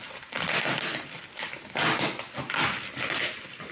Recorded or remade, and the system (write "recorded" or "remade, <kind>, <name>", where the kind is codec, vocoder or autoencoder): recorded